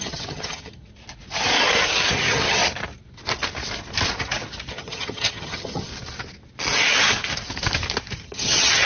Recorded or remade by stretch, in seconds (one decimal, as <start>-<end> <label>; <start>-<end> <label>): 0.0-0.9 remade; 0.9-2.1 recorded; 2.1-2.6 remade; 2.6-4.7 recorded; 4.7-5.9 remade; 5.9-8.2 recorded; 8.2-8.9 remade